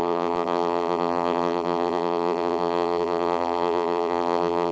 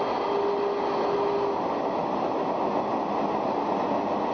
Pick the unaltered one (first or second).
second